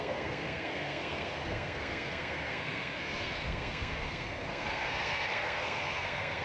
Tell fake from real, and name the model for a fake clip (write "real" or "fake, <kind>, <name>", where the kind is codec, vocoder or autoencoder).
fake, codec, SNAC